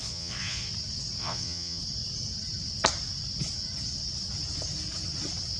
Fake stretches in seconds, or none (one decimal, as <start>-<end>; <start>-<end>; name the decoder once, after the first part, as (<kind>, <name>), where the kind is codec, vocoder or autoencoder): 0.0-0.7 (vocoder, Vocos); 1.2-1.8